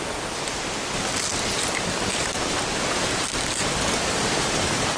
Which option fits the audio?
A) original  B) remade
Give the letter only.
A